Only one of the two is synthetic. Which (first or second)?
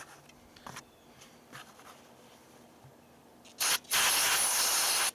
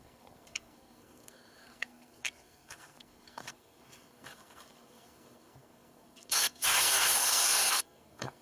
second